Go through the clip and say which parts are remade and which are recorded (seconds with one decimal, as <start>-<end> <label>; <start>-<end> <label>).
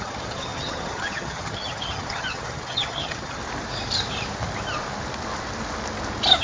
0.0-3.4 remade; 3.4-6.4 recorded